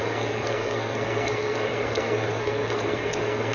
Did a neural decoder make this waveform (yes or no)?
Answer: yes